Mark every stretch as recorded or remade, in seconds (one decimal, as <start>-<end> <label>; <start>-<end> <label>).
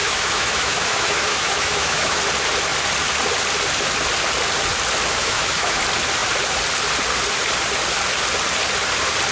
0.0-2.2 remade; 2.2-5.2 recorded; 5.2-5.8 remade; 5.8-9.3 recorded